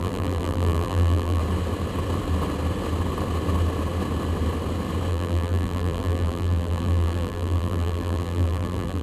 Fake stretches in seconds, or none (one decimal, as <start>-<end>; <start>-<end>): 0.0-1.4; 5.1-9.0